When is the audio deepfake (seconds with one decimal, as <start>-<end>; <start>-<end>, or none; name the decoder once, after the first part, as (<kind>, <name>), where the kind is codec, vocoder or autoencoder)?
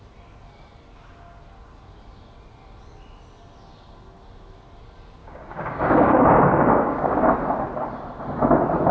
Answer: 5.2-7.3 (codec, DAC)